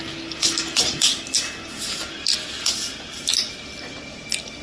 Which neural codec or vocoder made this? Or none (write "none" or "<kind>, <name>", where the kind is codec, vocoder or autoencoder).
none